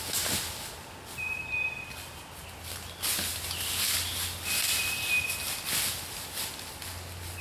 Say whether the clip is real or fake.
real